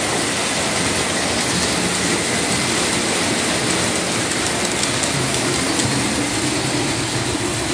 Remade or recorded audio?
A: recorded